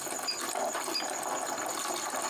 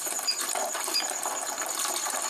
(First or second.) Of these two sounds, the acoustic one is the first